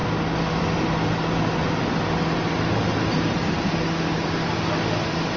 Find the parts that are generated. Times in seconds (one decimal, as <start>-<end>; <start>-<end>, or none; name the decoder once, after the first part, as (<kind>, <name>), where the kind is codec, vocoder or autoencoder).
none

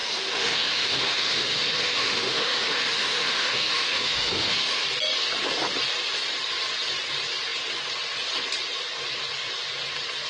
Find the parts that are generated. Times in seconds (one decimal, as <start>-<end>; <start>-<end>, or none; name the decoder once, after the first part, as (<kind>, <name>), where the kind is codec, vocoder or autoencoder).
0.0-4.8 (autoencoder, DAC-VAE)

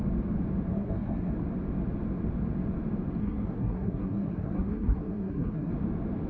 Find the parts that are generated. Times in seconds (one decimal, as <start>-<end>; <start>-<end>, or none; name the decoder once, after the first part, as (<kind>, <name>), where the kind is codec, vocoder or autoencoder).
0.7-1.3 (codec, SNAC); 3.2-5.7

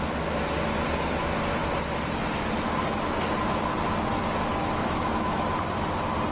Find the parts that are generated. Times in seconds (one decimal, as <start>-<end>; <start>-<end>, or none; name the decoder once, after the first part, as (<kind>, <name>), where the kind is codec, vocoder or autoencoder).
4.4-5.6 (autoencoder, DAC-VAE)

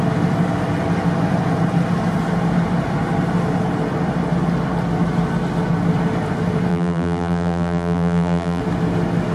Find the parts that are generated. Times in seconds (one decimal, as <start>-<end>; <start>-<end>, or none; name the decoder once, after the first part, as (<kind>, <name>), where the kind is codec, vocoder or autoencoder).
6.7-8.6 (vocoder, BigVGAN v2)

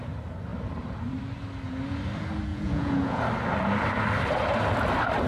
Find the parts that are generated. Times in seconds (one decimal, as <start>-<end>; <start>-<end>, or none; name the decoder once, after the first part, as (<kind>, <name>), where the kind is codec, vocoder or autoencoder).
2.5-3.2 (vocoder, Vocos)

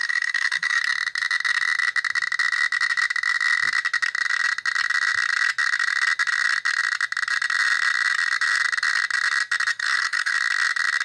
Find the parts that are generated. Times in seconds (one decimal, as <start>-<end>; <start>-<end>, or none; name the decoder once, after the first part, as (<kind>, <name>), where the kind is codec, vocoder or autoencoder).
0.0-0.8 (codec, SNAC); 9.7-10.3